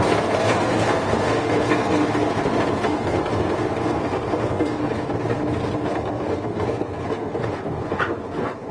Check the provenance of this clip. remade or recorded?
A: remade